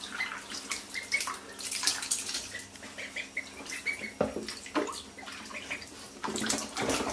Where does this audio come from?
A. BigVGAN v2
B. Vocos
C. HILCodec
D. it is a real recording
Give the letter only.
D